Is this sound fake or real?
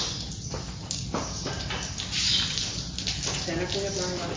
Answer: real